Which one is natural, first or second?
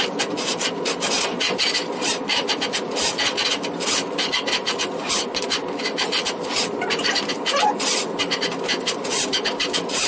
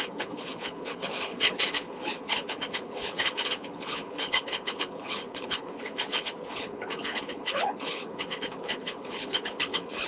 first